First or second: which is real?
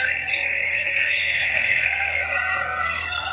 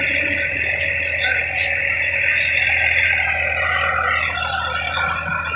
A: second